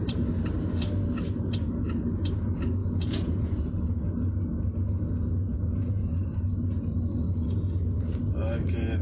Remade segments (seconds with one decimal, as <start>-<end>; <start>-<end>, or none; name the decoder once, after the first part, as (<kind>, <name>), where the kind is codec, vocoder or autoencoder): 2.8-3.7 (vocoder, Vocos); 5.5-6.2